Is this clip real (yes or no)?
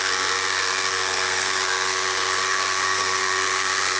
no